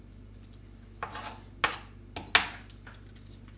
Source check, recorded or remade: recorded